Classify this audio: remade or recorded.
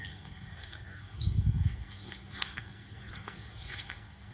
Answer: remade